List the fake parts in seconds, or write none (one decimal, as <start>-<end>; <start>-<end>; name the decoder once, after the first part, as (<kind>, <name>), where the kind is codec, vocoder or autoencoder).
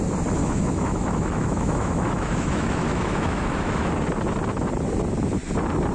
0.4-3.9 (autoencoder, DAC-VAE)